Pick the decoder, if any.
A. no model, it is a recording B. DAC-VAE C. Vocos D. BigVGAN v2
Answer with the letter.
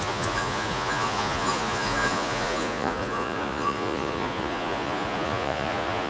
C